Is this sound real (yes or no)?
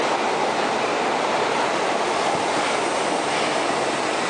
yes